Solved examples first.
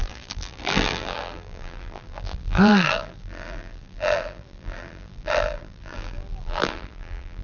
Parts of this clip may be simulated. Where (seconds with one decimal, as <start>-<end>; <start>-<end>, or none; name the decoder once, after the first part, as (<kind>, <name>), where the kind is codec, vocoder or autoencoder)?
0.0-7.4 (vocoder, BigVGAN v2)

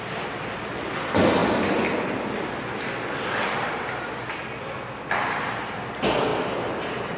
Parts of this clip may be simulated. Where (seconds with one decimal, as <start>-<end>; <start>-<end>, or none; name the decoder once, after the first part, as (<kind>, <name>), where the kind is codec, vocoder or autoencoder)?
none

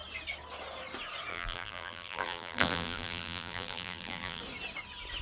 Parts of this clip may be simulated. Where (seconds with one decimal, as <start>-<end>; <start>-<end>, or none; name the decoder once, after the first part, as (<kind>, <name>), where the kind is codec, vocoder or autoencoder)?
1.3-4.4 (vocoder, BigVGAN v2)

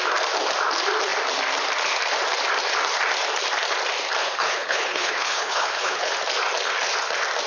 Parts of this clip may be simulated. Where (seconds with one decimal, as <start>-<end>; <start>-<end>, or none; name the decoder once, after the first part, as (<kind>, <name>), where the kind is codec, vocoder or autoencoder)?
4.2-6.1 (codec, HILCodec)

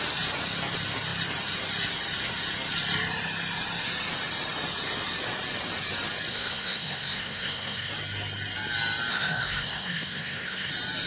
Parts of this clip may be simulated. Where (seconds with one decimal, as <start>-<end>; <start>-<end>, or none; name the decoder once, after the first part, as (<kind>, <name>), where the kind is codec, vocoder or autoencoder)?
6.3-7.9 (codec, SNAC); 9.1-10.7

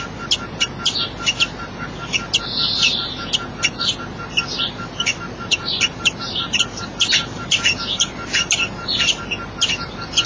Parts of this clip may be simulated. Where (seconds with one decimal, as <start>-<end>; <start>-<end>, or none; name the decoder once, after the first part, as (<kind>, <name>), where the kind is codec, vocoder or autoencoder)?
5.1-6.8 (vocoder, BigVGAN v2)

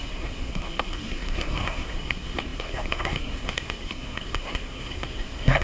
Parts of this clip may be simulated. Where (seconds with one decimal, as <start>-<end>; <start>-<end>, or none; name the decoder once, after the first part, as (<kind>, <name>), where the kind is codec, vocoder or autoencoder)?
0.0-5.6 (codec, SNAC)